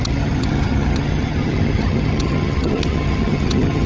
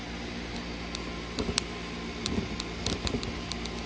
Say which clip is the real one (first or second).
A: second